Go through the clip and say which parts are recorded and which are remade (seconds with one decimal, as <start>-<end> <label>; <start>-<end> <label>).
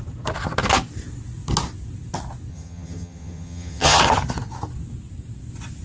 0.0-2.5 recorded; 2.5-4.0 remade; 4.0-5.8 recorded